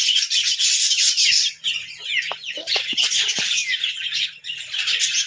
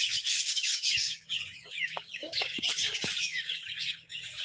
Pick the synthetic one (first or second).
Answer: second